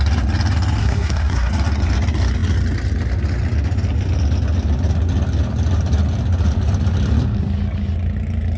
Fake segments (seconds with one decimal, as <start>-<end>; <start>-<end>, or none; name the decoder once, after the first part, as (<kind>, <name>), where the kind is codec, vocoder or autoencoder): 0.8-1.5 (codec, SNAC)